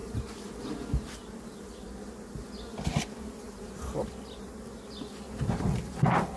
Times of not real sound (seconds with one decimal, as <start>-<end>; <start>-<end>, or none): none